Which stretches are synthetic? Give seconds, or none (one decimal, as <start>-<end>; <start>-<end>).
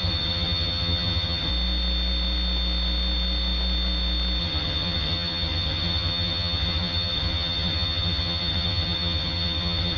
0.0-1.5; 4.4-10.0